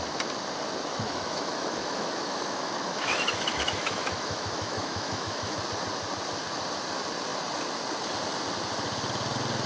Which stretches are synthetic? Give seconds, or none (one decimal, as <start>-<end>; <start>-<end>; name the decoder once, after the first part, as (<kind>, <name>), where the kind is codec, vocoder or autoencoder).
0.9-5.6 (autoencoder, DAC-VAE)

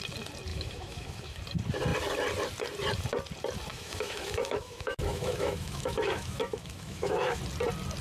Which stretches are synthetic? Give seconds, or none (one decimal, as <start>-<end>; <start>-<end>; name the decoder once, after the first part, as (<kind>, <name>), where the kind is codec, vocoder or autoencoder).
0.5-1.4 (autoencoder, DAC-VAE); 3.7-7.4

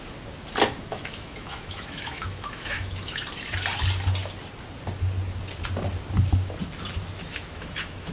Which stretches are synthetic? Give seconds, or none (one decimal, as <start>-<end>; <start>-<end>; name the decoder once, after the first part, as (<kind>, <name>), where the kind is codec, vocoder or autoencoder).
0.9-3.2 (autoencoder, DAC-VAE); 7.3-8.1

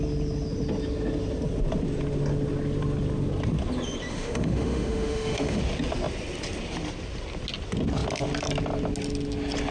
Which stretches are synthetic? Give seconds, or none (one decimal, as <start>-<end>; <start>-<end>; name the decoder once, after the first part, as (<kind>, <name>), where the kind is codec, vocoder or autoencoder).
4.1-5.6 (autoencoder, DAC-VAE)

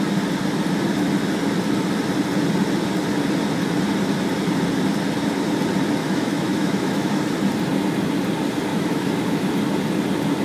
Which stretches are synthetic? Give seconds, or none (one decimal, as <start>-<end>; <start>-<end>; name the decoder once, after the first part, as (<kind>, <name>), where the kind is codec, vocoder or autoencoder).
6.0-7.2 (autoencoder, DAC-VAE); 8.7-9.5

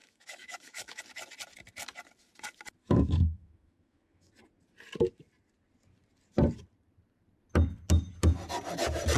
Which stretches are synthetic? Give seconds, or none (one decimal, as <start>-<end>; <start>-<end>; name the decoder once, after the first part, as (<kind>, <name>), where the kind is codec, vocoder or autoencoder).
0.0-1.0 (autoencoder, DAC-VAE); 2.8-4.3

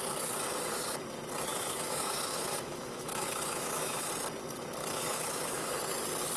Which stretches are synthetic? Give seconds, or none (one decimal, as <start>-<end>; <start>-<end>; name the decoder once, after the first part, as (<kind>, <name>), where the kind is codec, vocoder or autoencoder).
1.5-4.1 (autoencoder, DAC-VAE); 4.8-5.7